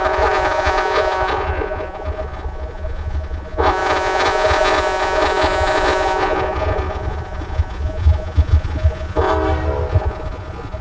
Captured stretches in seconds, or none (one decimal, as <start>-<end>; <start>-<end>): 9.3-9.9